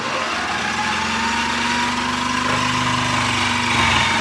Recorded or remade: recorded